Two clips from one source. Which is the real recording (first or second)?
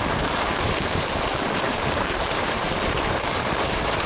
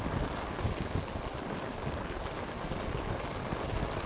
second